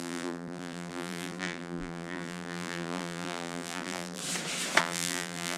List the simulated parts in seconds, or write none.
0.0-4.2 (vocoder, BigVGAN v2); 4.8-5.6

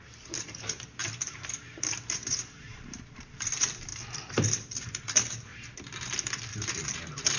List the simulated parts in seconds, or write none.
0.0-5.5 (vocoder, BigVGAN v2); 6.9-7.4

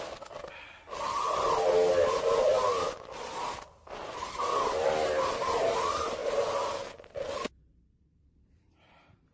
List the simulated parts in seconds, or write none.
none